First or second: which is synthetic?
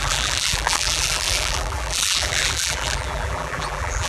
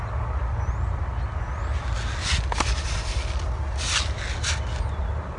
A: first